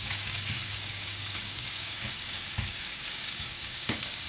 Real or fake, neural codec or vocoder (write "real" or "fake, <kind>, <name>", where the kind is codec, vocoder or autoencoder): fake, codec, DAC